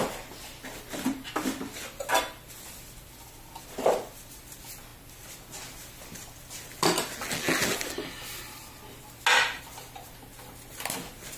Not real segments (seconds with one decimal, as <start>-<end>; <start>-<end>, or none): none